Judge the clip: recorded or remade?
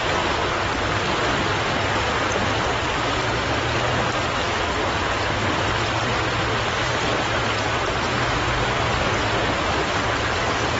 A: recorded